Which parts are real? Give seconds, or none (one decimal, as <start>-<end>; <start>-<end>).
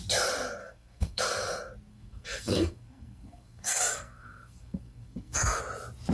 0.0-0.6; 1.2-1.9; 5.6-6.1